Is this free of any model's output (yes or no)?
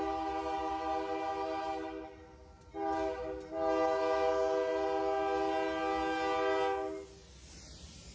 yes